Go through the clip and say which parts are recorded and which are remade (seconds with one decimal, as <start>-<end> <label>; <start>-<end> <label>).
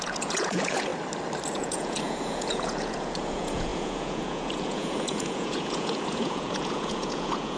0.0-0.9 remade; 0.9-1.5 recorded; 1.5-7.6 remade